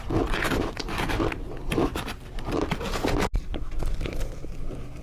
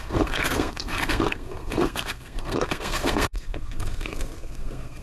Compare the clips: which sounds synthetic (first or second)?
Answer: second